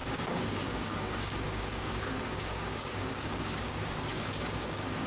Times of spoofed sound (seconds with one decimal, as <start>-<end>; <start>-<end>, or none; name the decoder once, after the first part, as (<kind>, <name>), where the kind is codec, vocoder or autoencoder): 0.0-5.1 (codec, DAC)